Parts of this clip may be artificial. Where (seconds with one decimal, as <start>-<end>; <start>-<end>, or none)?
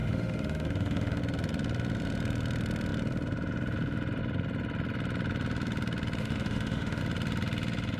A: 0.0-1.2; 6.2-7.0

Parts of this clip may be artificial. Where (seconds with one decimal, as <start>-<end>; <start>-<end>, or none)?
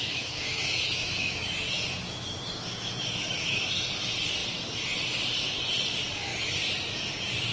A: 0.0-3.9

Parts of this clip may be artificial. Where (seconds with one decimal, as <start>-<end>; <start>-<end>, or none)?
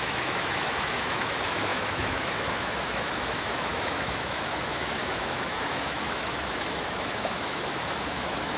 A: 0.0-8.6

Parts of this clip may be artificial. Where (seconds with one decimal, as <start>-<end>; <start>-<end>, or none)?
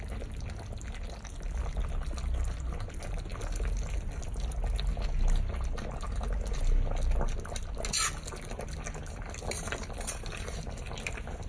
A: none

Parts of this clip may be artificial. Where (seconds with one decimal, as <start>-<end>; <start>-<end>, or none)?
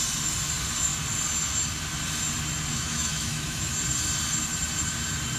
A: 2.7-3.7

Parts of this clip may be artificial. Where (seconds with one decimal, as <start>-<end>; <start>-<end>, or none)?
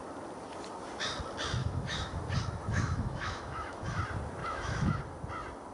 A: 1.6-2.2; 2.7-4.0; 4.4-5.0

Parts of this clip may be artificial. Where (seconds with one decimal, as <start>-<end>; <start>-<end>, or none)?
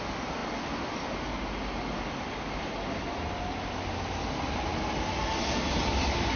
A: none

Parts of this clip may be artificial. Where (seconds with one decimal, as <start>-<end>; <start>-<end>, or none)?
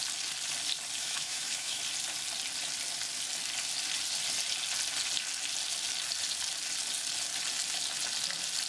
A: 1.0-1.8